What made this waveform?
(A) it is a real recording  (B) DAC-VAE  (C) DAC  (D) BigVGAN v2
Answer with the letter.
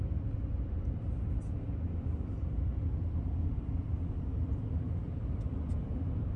A